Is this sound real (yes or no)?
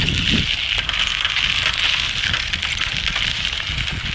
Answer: yes